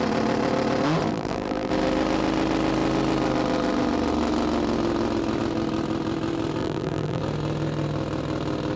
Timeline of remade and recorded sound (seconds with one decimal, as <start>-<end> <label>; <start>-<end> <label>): 0.0-1.1 recorded; 1.1-1.7 remade; 1.7-6.6 recorded; 6.6-7.2 remade; 7.2-8.8 recorded